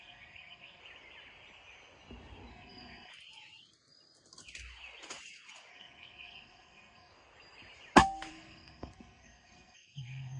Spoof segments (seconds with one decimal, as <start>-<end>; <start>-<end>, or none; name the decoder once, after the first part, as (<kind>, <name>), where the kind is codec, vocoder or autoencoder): 0.0-0.8 (codec, SNAC); 2.5-3.1; 5.7-7.1; 8.3-10.4